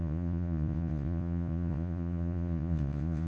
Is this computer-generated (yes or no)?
yes